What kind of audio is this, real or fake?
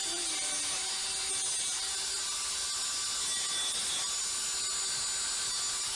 real